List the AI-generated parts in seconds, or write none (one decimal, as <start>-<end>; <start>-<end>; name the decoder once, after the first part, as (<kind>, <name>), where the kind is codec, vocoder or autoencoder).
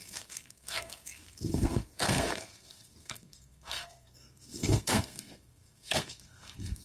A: 0.0-6.8 (codec, SNAC)